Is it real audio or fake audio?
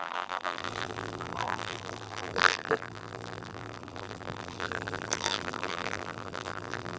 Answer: fake